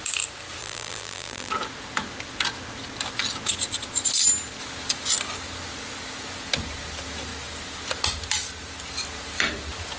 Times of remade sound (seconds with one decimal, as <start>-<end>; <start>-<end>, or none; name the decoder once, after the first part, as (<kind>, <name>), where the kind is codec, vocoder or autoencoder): 0.6-1.5 (vocoder, BigVGAN v2)

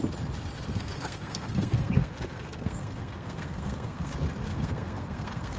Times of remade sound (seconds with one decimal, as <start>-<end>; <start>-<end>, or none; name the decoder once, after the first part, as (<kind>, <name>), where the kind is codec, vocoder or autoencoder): 0.7-4.1 (codec, SNAC); 4.5-5.6

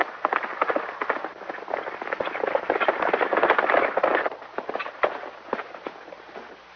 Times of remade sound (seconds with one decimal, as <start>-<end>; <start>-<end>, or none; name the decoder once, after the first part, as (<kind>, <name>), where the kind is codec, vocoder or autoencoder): none

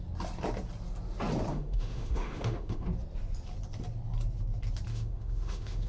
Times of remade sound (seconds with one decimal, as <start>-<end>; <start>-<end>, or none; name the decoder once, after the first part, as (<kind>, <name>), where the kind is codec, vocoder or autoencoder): 1.5-2.9 (autoencoder, DAC-VAE); 4.9-5.9